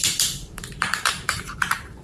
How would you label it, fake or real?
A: fake